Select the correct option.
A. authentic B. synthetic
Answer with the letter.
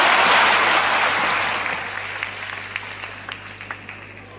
A